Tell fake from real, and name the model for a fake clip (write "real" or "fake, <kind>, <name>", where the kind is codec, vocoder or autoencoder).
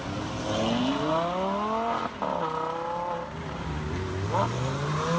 real